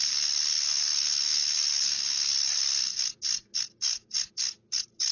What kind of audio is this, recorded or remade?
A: recorded